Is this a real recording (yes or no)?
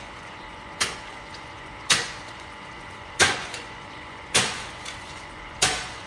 no